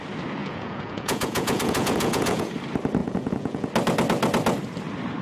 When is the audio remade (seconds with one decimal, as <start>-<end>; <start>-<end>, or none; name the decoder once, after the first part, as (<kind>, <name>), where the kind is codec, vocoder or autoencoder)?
0.4-2.5 (vocoder, Vocos); 3.0-3.7